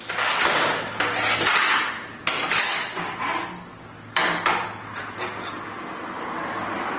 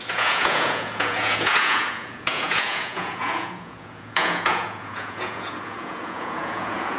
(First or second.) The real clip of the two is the first